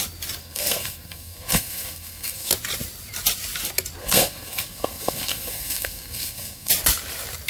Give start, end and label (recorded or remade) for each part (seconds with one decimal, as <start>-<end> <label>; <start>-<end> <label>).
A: 0.0-0.4 recorded; 0.4-2.5 remade; 2.5-4.0 recorded; 4.0-6.7 remade; 6.7-7.5 recorded